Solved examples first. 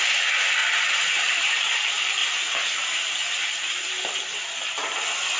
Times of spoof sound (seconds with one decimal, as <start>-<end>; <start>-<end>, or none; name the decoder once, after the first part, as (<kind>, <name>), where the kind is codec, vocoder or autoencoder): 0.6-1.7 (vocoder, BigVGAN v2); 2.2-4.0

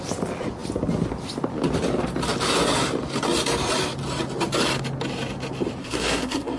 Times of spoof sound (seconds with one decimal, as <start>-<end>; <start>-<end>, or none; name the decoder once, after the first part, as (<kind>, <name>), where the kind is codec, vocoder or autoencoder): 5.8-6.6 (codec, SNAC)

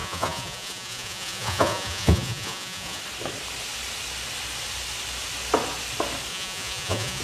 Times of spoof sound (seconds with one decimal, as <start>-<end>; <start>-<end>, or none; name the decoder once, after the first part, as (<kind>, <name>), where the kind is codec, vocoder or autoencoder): 0.0-3.0 (vocoder, Vocos); 6.3-7.2

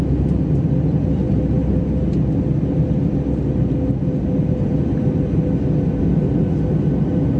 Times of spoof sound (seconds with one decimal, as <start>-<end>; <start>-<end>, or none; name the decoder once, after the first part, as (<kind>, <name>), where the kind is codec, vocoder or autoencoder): none

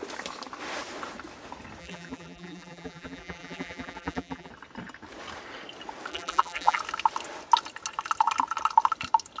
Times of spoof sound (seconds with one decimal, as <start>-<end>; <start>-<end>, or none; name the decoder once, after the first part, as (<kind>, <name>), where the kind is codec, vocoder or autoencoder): 1.8-4.5 (vocoder, BigVGAN v2); 6.1-6.8

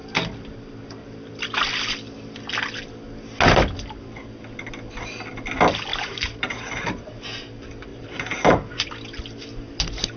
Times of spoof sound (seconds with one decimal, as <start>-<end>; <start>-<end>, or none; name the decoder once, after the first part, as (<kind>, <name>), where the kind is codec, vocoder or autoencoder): 5.9-7.2 (vocoder, BigVGAN v2); 7.9-8.9

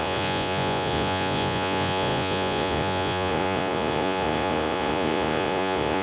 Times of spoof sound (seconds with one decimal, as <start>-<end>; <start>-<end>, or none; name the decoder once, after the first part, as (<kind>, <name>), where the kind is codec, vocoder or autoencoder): 0.0-6.0 (vocoder, Vocos)